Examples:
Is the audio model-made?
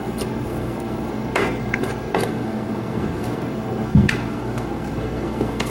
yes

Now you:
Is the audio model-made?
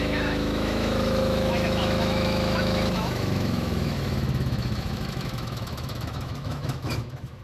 yes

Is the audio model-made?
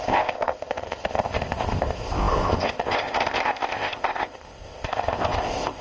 yes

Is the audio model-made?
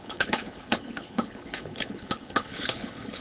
yes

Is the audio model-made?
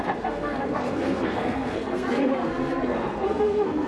yes